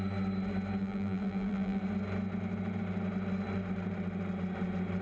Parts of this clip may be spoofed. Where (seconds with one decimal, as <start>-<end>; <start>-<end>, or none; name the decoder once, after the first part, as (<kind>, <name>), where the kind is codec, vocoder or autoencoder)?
0.8-1.8 (vocoder, BigVGAN v2)